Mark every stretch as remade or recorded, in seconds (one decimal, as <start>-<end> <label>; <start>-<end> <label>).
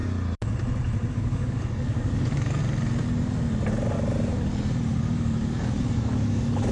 0.0-1.1 recorded; 1.1-2.6 remade; 2.6-5.0 recorded; 5.0-6.7 remade